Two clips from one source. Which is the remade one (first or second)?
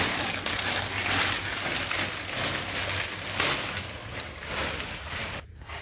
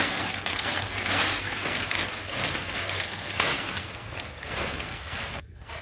second